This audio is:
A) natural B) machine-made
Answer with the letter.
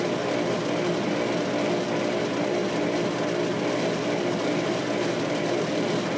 A